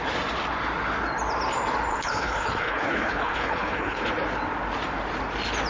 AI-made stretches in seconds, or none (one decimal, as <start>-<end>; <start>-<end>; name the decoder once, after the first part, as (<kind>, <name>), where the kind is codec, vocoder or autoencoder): 1.9-4.1 (codec, HILCodec)